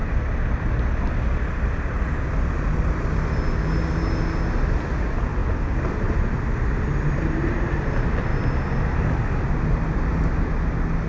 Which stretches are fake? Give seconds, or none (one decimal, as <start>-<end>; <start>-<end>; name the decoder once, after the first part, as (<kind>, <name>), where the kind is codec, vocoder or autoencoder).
none